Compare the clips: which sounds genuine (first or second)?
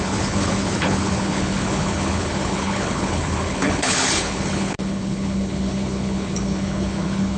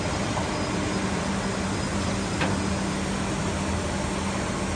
second